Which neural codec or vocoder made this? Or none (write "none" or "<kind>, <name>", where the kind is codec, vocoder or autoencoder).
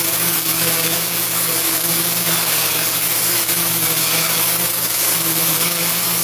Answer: codec, DAC